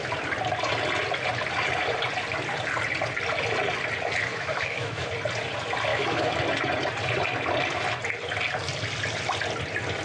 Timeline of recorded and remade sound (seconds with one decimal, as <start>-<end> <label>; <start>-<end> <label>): 0.0-4.3 recorded; 4.3-5.1 remade; 5.1-5.9 recorded; 5.9-6.4 remade; 6.4-10.0 recorded